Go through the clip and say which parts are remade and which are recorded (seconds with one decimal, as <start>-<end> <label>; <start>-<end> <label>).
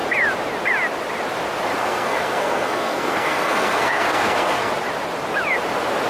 0.0-1.8 recorded; 1.8-4.7 remade; 4.7-6.1 recorded